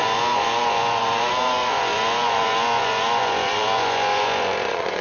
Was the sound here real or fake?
fake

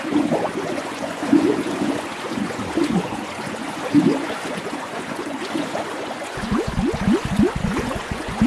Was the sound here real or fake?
fake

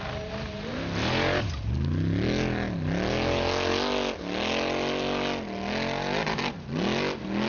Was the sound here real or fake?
real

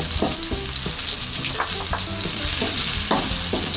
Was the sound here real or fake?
real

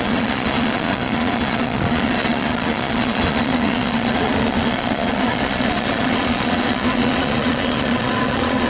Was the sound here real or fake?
fake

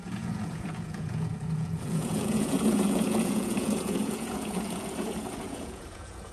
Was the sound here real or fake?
fake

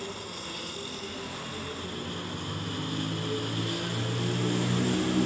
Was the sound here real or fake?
real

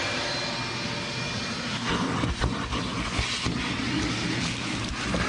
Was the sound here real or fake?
real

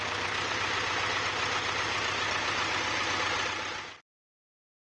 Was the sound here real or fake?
real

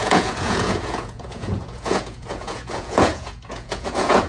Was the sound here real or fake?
fake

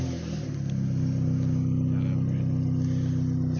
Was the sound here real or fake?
real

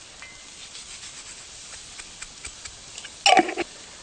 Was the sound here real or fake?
real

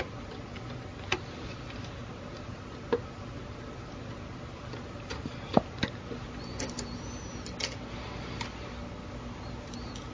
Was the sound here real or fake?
real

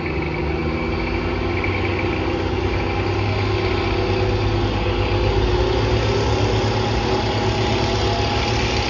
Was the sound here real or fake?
real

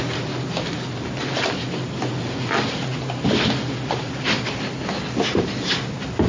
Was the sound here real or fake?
real